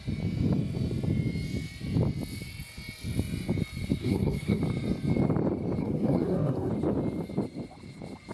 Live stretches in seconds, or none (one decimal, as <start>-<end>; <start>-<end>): 0.0-4.0; 4.6-5.8; 6.7-8.3